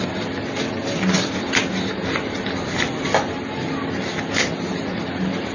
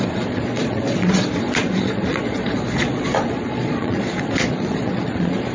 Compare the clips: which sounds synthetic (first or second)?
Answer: second